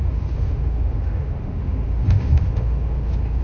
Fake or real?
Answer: fake